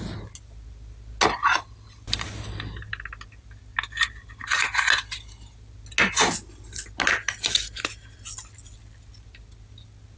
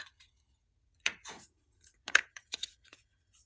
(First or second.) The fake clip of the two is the second